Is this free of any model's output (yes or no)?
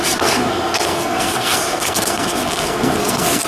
no